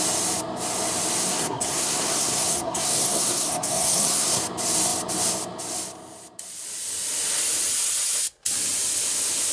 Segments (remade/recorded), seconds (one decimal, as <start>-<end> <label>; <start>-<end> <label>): 0.0-1.2 recorded; 1.2-4.4 remade; 4.4-9.5 recorded